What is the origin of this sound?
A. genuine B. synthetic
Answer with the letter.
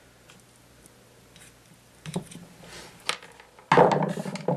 A